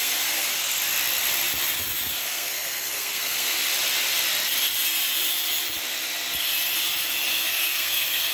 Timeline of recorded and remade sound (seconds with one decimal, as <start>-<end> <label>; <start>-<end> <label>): 0.0-0.5 remade; 0.5-2.1 recorded; 2.1-3.6 remade; 3.6-7.3 recorded; 7.3-8.3 remade